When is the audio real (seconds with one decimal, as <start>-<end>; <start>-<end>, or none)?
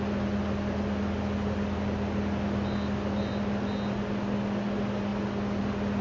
0.0-6.0